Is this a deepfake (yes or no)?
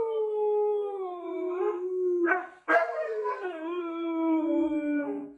yes